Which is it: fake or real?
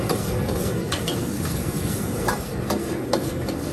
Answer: fake